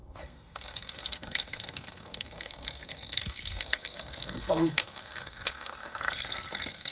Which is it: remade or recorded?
remade